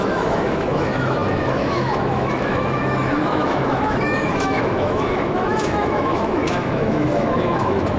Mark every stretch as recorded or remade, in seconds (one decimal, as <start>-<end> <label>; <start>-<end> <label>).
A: 0.0-8.0 remade